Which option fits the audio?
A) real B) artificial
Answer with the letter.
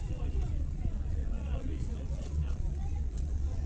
B